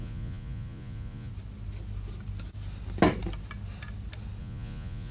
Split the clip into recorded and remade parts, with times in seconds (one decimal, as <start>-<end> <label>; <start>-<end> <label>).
0.0-1.3 remade; 1.3-4.4 recorded; 4.4-5.1 remade

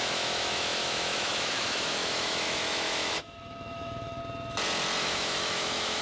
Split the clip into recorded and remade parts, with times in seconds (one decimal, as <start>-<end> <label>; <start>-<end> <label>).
0.0-4.2 remade; 4.2-5.0 recorded; 5.0-6.0 remade

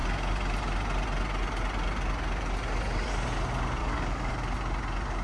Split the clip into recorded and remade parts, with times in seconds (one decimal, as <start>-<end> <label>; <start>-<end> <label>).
0.0-3.8 recorded; 3.8-4.3 remade; 4.3-5.2 recorded

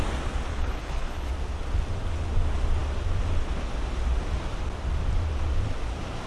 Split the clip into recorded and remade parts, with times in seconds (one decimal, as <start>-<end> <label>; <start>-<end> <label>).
0.0-0.5 recorded; 0.5-1.3 remade; 1.3-6.3 recorded

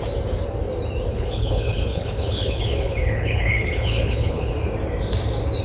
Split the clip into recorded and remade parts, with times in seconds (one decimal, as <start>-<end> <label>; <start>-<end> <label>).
0.0-1.1 recorded; 1.1-4.5 remade; 4.5-5.6 recorded

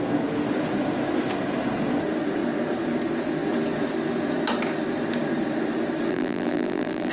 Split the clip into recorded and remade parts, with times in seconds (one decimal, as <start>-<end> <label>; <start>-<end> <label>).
0.0-6.1 recorded; 6.1-7.1 remade

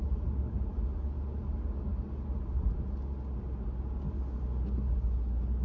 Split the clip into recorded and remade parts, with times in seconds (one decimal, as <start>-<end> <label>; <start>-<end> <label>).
0.0-5.6 recorded